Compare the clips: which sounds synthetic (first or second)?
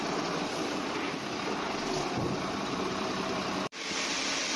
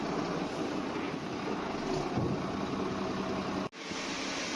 first